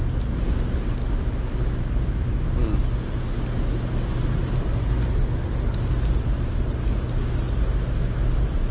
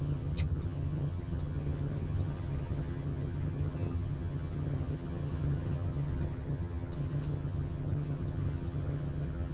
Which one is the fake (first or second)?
second